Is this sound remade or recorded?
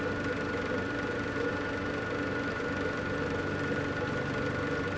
recorded